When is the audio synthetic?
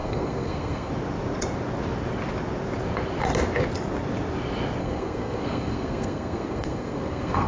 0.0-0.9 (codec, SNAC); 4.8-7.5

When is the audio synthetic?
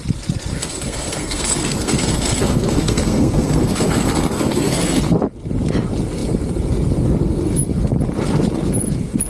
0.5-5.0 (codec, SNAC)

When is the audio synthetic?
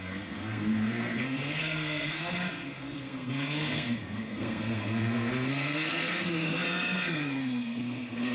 0.0-8.3 (codec, SNAC)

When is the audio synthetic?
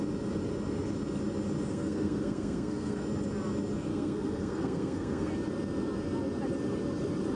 1.7-3.0 (codec, SNAC); 3.9-5.3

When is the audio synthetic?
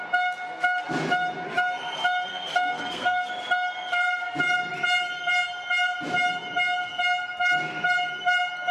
2.3-3.3 (codec, SNAC)